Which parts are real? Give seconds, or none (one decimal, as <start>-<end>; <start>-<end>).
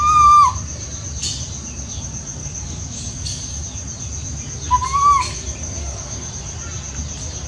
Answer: 0.0-2.4; 3.6-5.6; 6.3-7.5